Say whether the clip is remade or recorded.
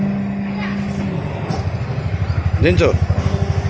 recorded